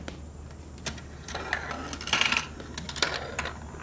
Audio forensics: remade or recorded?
recorded